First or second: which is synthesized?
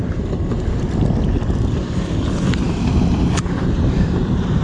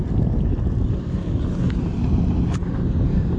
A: first